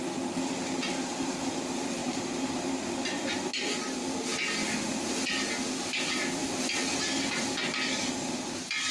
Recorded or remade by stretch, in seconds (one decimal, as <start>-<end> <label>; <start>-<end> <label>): 0.0-2.0 recorded; 2.0-2.6 remade; 2.6-8.9 recorded